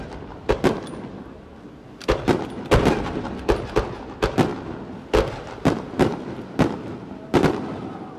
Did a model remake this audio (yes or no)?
no